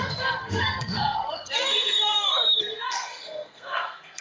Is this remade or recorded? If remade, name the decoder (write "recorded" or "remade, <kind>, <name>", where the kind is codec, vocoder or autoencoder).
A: remade, codec, SNAC